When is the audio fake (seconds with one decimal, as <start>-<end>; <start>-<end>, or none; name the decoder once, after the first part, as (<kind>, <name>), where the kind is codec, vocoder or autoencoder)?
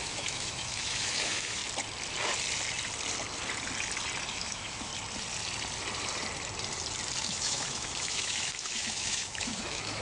0.0-1.6 (autoencoder, DAC-VAE); 4.3-4.9; 7.2-10.0